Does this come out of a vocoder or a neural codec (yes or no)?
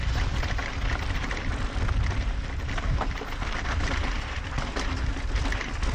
no